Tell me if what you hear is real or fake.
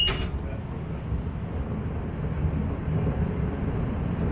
real